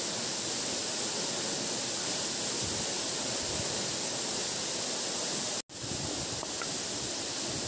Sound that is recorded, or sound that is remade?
recorded